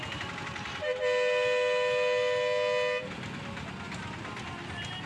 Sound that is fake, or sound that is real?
real